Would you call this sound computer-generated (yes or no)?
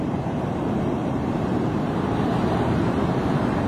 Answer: yes